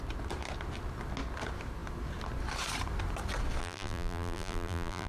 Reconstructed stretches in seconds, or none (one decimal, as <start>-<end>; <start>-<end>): 3.6-5.1